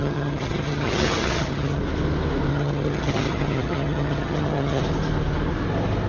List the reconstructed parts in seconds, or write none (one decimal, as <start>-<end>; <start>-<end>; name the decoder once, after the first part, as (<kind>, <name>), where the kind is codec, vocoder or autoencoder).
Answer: 0.0-1.8 (vocoder, HiFi-GAN); 2.5-4.8